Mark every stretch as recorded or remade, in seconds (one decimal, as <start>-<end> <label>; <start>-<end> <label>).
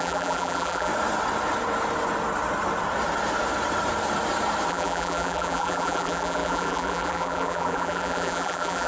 0.0-0.9 remade; 0.9-4.7 recorded; 4.7-8.9 remade